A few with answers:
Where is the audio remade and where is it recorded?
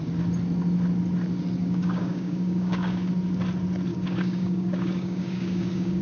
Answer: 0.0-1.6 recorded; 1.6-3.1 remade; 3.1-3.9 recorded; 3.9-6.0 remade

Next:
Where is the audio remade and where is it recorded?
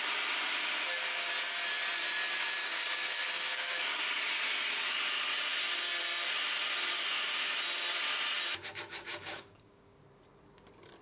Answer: 0.0-2.6 recorded; 2.6-4.0 remade; 4.0-9.1 recorded; 9.1-10.0 remade; 10.0-11.0 recorded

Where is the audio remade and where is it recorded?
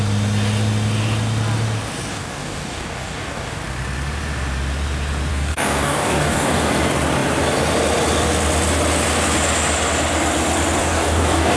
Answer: 0.0-2.1 recorded; 2.1-3.6 remade; 3.6-5.3 recorded; 5.3-6.7 remade; 6.7-10.8 recorded; 10.8-11.6 remade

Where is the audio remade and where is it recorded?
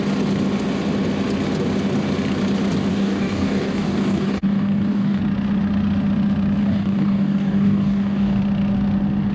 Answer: 0.0-2.9 recorded; 2.9-5.2 remade; 5.2-6.6 recorded; 6.6-8.4 remade; 8.4-9.3 recorded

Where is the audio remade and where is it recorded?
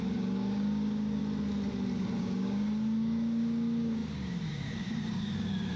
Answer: 0.0-1.2 remade; 1.2-2.2 recorded; 2.2-5.8 remade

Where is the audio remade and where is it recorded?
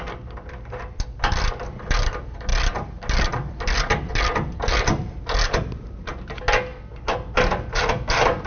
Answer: 0.0-8.5 recorded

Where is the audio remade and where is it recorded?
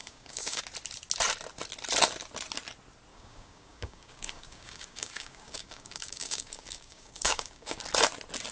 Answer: 0.0-0.6 remade; 0.6-3.1 recorded; 3.1-7.8 remade; 7.8-8.5 recorded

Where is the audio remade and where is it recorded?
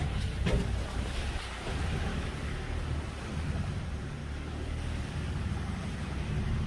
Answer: 0.0-2.1 recorded; 2.1-2.7 remade; 2.7-4.2 recorded; 4.2-5.5 remade; 5.5-6.7 recorded